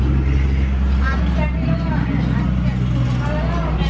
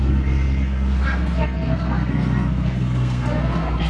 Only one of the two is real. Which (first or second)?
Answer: first